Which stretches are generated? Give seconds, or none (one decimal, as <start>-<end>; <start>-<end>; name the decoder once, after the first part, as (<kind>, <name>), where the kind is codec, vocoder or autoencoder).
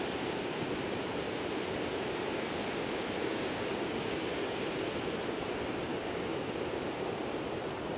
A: 3.2-4.6 (codec, DAC); 5.9-6.5